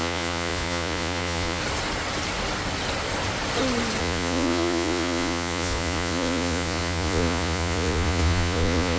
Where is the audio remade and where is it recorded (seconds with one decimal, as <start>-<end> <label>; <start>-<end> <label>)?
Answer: 0.0-1.6 remade; 1.6-4.0 recorded; 4.0-9.0 remade